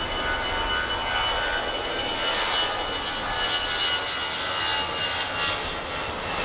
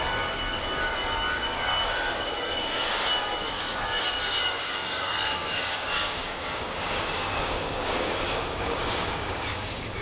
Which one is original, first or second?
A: first